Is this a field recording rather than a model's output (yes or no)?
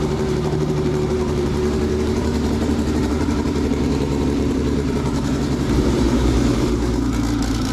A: no